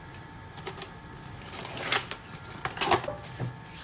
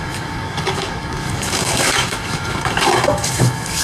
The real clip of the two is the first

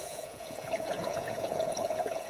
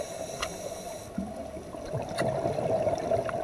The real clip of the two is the second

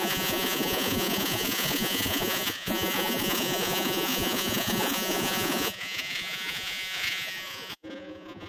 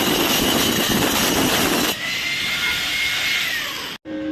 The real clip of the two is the second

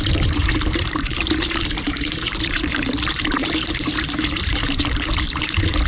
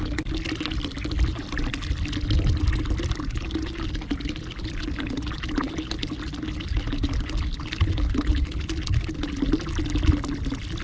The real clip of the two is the second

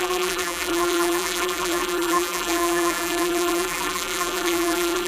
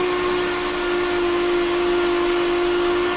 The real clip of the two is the second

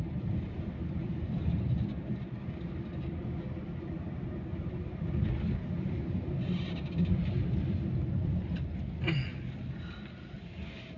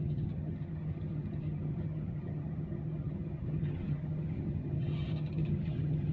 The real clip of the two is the first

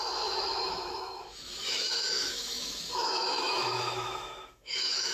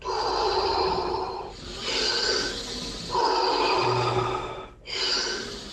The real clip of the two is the second